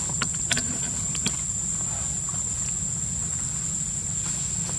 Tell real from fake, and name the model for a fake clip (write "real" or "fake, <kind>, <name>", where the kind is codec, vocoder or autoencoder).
real